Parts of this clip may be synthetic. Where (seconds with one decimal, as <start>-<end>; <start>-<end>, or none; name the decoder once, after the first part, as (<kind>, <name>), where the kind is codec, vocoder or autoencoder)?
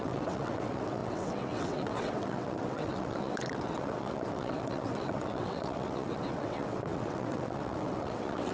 0.0-8.5 (vocoder, WaveNeXt)